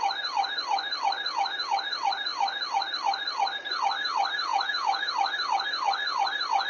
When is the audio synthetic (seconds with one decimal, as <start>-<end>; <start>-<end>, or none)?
4.5-5.1